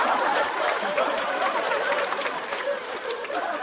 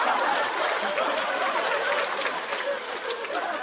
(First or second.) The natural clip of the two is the second